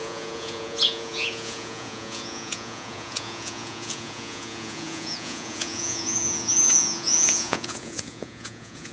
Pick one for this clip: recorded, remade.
remade